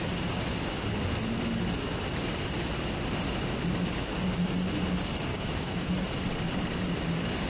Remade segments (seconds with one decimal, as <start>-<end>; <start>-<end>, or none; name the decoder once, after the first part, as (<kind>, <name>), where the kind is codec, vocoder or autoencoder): 5.3-5.9 (autoencoder, DAC-VAE)